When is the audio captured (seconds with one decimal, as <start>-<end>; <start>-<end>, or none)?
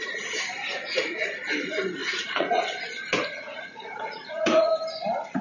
0.0-0.6; 1.2-2.0; 2.6-3.2; 4.7-5.4